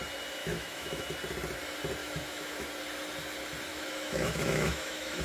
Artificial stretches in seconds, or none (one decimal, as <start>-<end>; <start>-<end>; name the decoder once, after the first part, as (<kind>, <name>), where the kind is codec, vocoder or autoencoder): 0.4-1.0 (autoencoder, DAC-VAE); 2.0-2.7; 3.7-5.2